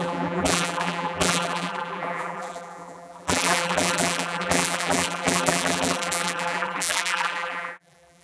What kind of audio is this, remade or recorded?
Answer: remade